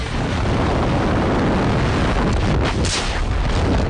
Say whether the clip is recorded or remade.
recorded